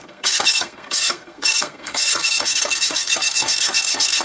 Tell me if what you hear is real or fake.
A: fake